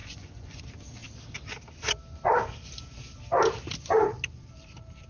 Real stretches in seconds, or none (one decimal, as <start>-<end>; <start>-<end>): 0.6-5.1